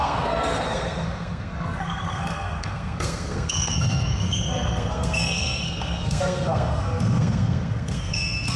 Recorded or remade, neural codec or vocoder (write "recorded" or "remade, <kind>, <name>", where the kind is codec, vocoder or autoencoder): remade, codec, SNAC